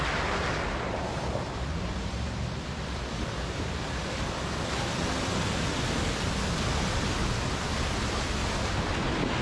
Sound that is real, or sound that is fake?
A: real